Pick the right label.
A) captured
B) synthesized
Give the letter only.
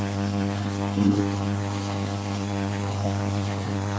B